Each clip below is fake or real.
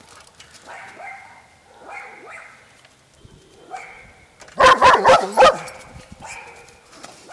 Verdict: real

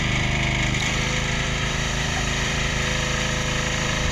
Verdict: fake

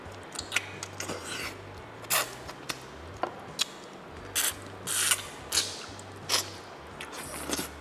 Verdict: real